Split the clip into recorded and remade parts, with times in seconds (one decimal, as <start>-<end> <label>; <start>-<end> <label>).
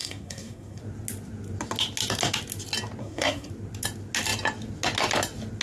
0.0-0.8 remade; 0.8-3.0 recorded; 3.0-3.5 remade; 3.5-5.6 recorded